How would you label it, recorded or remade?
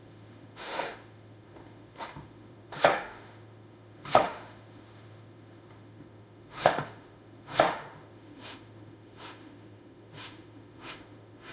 remade